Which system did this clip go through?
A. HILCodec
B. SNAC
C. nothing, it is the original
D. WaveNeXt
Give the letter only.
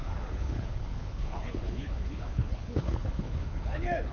A